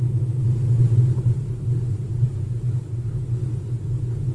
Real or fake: real